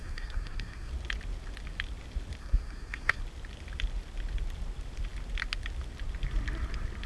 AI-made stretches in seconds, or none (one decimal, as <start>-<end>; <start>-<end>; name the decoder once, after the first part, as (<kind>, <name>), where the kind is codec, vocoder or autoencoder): 0.0-0.9 (codec, SNAC); 2.4-3.2